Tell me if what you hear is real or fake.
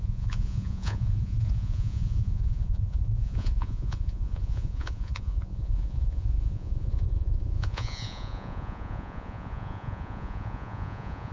fake